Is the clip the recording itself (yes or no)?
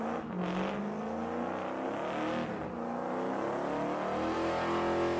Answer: yes